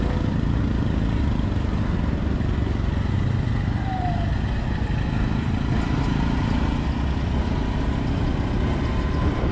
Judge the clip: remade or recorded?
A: recorded